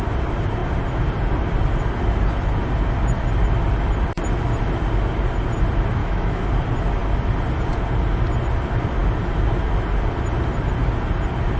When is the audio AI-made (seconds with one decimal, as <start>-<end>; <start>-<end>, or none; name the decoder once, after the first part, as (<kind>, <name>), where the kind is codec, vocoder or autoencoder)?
6.0-6.5 (autoencoder, DAC-VAE)